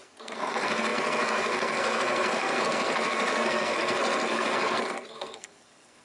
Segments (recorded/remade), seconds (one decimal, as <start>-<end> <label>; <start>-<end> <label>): 0.0-6.0 remade